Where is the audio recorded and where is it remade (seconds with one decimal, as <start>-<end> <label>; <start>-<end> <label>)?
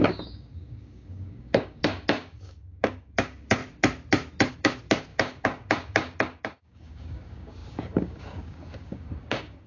0.0-3.6 remade; 3.6-4.5 recorded; 4.5-9.7 remade